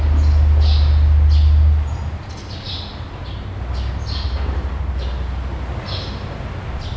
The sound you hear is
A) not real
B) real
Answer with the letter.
B